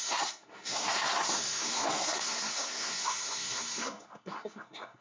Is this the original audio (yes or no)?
no